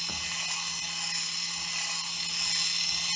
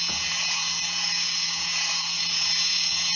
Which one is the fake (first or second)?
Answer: second